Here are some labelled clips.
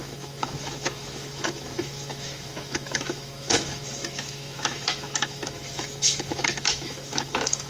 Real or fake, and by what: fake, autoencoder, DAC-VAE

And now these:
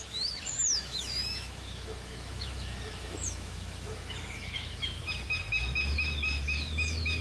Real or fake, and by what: fake, autoencoder, DAC-VAE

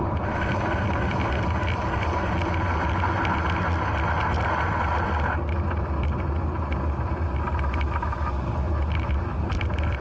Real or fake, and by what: real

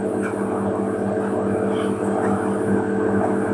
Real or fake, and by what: real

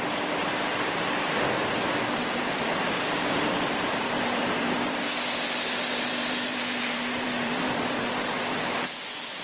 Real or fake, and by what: fake, vocoder, BigVGAN v2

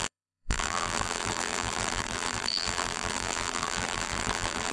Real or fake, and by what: fake, vocoder, BigVGAN v2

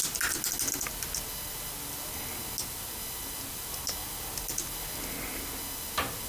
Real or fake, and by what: real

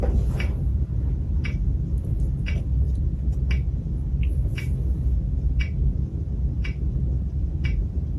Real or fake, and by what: real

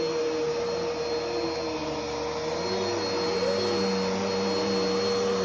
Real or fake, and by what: real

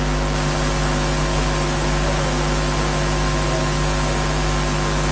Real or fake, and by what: real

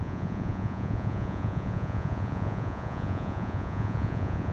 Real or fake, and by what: fake, vocoder, Vocos